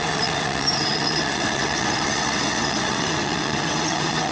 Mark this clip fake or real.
fake